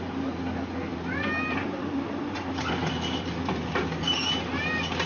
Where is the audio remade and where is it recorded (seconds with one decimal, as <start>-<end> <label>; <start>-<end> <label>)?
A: 0.0-0.9 recorded; 0.9-4.0 remade; 4.0-5.1 recorded